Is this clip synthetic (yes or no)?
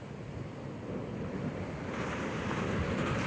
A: no